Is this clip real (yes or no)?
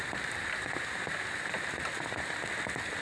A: yes